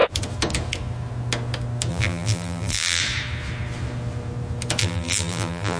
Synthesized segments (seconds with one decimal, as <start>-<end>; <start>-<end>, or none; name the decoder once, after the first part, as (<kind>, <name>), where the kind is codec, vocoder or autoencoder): 1.9-3.0 (vocoder, BigVGAN v2); 4.8-5.8